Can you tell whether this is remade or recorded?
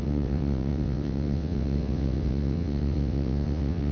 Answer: remade